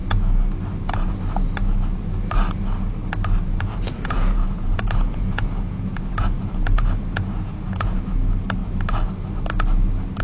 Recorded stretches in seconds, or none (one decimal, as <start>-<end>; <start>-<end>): 0.0-3.5; 8.0-10.2